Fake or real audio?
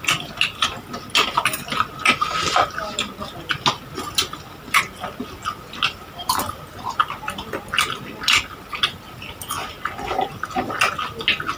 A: real